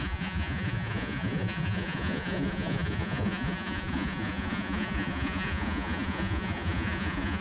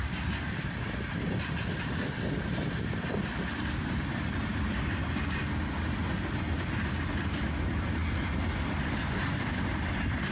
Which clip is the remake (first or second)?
first